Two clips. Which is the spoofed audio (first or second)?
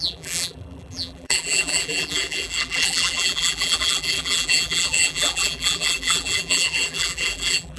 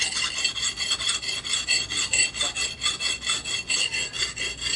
first